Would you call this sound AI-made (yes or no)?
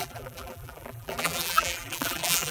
yes